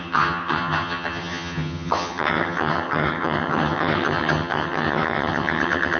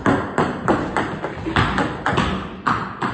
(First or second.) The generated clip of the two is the first